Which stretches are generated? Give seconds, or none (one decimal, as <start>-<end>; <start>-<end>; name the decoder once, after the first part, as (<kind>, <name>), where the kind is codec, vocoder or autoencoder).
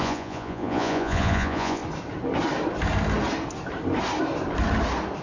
0.0-1.8 (vocoder, Vocos)